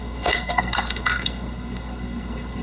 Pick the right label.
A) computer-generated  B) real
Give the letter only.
A